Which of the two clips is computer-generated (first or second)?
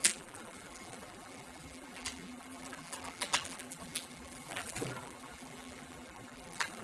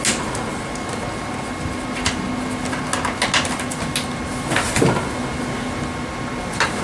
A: first